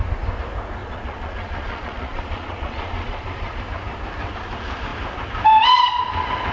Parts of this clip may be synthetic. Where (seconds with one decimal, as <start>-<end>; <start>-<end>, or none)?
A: 0.8-3.6